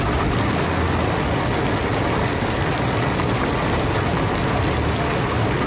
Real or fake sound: real